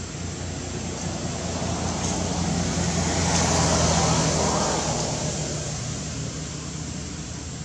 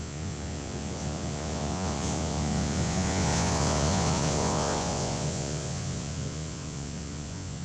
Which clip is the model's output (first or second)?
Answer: second